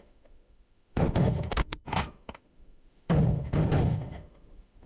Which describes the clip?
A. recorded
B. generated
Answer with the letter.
B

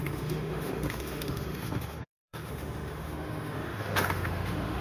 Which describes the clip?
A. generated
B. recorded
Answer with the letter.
A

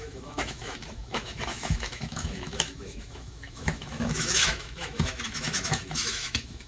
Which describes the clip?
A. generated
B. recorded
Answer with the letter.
A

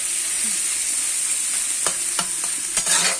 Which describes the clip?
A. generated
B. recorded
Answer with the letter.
B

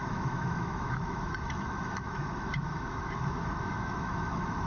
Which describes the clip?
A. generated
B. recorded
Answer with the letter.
A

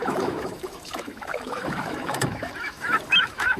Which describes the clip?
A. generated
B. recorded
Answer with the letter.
A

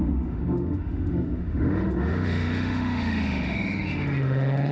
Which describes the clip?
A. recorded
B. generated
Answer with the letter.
B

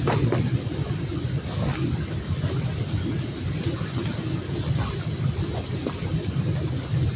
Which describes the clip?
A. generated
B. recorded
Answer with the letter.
B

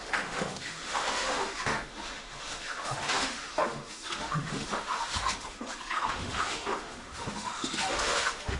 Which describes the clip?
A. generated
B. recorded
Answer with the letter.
A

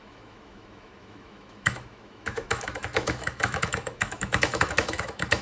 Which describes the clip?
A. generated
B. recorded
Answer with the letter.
A